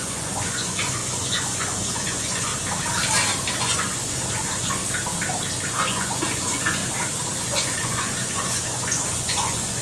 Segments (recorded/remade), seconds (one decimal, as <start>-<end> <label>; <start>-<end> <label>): 0.0-2.5 remade; 2.5-3.6 recorded; 3.6-4.8 remade; 4.8-5.7 recorded; 5.7-6.8 remade; 6.8-7.4 recorded; 7.4-9.8 remade

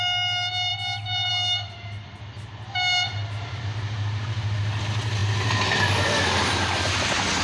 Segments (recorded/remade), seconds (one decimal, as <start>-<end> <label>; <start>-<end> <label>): 0.0-7.4 recorded

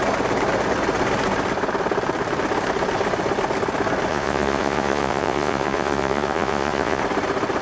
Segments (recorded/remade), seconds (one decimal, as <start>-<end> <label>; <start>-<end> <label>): 0.0-4.1 recorded; 4.1-7.0 remade; 7.0-7.6 recorded